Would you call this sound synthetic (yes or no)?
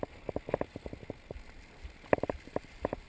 no